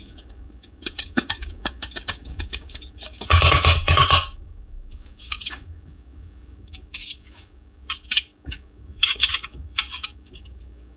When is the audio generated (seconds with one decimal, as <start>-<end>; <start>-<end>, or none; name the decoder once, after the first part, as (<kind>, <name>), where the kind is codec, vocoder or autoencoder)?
0.0-11.0 (codec, DAC)

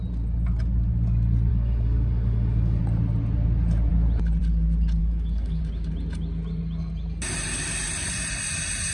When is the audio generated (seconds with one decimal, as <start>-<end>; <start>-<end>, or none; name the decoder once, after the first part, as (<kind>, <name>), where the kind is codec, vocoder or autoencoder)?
1.5-2.8 (codec, DAC); 5.0-5.6

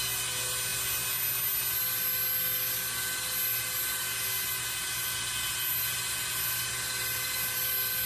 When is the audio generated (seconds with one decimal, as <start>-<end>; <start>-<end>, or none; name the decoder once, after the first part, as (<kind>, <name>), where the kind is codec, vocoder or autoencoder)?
none

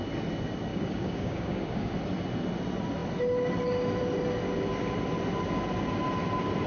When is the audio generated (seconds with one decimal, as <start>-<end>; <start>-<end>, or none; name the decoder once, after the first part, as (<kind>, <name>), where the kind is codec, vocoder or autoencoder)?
0.7-1.9 (codec, DAC)